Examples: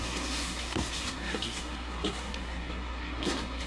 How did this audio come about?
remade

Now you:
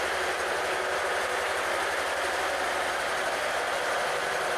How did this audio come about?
recorded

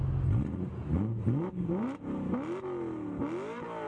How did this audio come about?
recorded